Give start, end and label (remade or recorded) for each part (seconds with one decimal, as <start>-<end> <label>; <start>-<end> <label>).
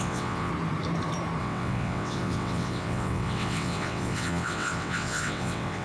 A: 0.0-0.5 remade; 0.5-1.4 recorded; 1.4-5.8 remade